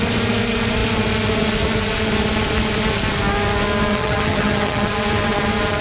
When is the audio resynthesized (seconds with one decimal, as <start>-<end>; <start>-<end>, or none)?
3.9-4.9